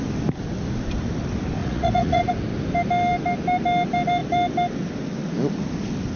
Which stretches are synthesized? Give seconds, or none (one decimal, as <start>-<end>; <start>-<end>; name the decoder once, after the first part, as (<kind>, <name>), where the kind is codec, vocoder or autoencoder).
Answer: 1.6-2.3 (vocoder, Vocos)